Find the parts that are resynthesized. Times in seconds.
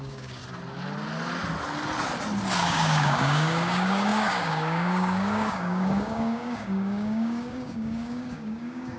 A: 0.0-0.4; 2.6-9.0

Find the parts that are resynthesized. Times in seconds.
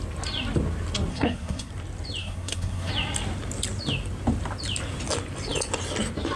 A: 1.1-1.7; 2.2-2.9